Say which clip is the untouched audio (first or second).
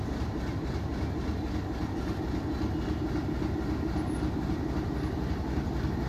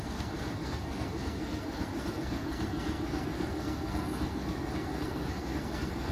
first